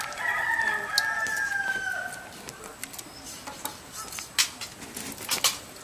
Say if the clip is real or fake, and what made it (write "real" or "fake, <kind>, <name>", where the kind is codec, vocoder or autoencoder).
real